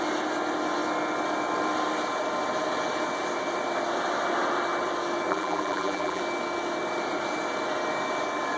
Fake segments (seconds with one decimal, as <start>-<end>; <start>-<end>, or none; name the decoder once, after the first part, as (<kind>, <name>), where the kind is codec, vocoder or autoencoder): 5.3-6.2 (vocoder, BigVGAN v2)